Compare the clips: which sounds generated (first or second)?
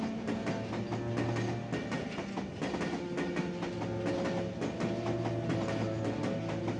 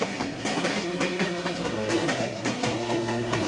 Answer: second